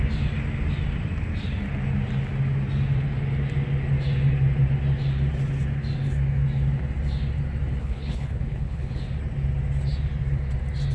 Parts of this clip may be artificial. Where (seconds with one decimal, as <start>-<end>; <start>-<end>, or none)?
7.8-9.0